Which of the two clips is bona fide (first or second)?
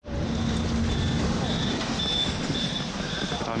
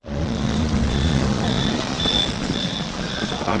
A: first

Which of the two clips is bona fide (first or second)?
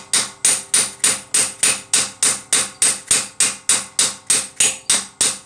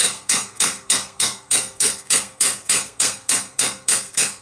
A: first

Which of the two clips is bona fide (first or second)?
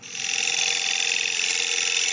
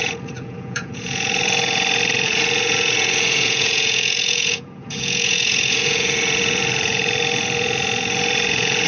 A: first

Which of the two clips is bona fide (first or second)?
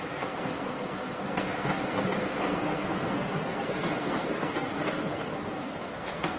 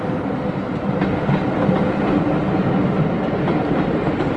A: second